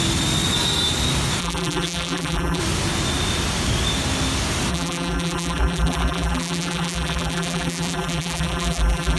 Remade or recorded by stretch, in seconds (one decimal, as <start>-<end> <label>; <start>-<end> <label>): 0.0-1.4 recorded; 1.4-2.6 remade; 2.6-4.7 recorded; 4.7-9.2 remade